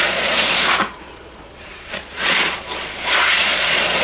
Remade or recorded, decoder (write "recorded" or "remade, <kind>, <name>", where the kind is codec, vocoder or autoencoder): remade, vocoder, Vocos